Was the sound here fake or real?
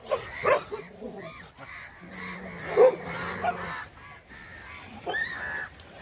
real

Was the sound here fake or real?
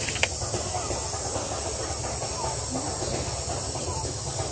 real